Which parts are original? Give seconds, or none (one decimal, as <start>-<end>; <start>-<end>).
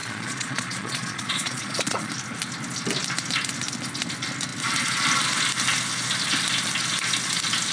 2.1-7.7